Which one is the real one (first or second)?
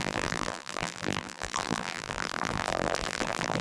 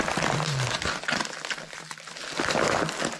second